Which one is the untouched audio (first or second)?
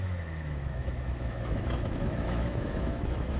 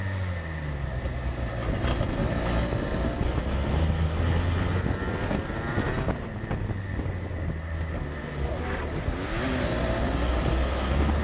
second